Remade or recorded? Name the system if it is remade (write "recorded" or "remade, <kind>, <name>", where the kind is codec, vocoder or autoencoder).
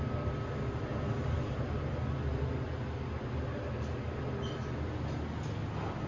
recorded